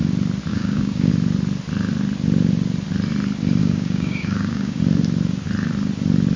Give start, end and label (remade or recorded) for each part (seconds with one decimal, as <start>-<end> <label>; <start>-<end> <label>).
0.0-0.5 recorded; 0.5-1.1 remade; 1.1-3.6 recorded; 3.6-4.8 remade; 4.8-6.4 recorded